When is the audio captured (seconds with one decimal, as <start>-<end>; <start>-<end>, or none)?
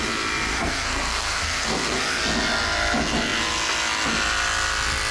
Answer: 0.0-0.5; 2.2-5.1